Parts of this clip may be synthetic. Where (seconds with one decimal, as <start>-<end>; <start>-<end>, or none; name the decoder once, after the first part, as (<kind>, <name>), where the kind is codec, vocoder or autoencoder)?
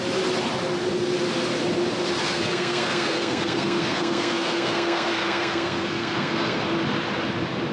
2.2-6.6 (codec, SNAC)